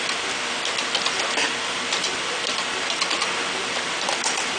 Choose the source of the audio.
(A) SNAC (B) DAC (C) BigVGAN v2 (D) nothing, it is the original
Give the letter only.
C